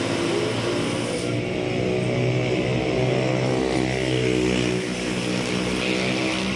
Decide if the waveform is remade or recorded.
recorded